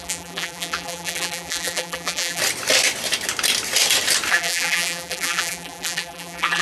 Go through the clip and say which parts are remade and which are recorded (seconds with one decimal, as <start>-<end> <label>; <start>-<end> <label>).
0.0-2.4 remade; 2.4-4.3 recorded; 4.3-6.6 remade